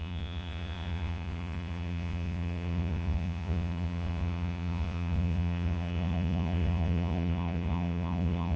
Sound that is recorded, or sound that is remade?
remade